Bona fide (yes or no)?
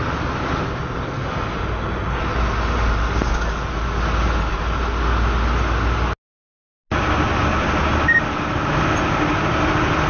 yes